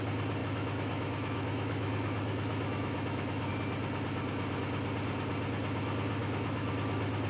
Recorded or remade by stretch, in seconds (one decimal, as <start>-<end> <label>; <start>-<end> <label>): 0.0-0.4 recorded; 0.4-3.5 remade; 3.5-6.2 recorded; 6.2-6.7 remade; 6.7-7.3 recorded